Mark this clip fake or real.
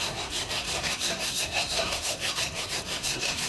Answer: fake